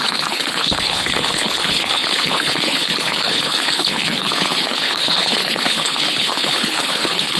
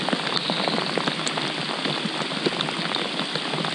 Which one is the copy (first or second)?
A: first